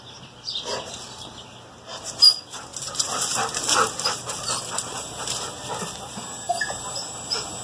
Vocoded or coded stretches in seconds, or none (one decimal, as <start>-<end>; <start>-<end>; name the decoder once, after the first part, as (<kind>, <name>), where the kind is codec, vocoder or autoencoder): none